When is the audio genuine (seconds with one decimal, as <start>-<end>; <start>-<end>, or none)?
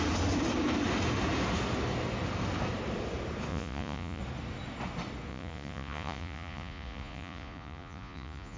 0.0-3.5; 4.2-5.3